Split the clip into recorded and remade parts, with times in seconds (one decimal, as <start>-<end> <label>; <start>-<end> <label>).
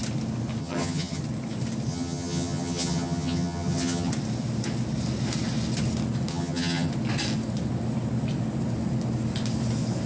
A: 0.0-0.6 recorded; 0.6-1.2 remade; 1.2-1.9 recorded; 1.9-4.1 remade; 4.1-6.3 recorded; 6.3-6.9 remade; 6.9-10.1 recorded